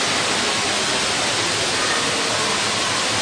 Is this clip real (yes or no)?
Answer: yes